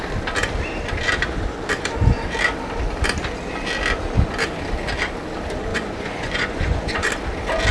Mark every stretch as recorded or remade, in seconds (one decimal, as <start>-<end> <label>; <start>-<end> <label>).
0.0-5.7 recorded; 5.7-7.1 remade; 7.1-7.7 recorded